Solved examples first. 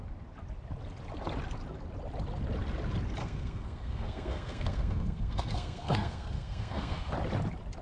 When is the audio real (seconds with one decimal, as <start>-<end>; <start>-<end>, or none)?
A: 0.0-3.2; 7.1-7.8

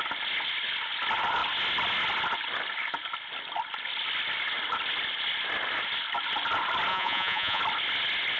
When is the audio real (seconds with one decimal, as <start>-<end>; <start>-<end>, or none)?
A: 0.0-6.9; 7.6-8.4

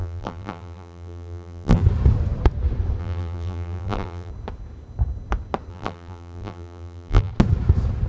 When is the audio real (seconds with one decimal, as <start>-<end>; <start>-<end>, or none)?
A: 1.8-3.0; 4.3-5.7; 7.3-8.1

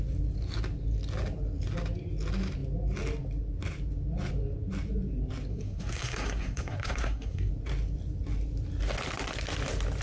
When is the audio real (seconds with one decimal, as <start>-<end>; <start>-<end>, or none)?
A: 0.0-5.5; 7.5-10.0